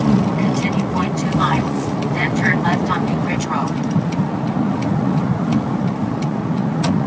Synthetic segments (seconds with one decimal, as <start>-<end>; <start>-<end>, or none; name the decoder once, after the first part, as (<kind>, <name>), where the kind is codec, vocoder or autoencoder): 0.0-7.1 (vocoder, Vocos)